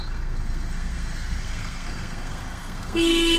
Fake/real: fake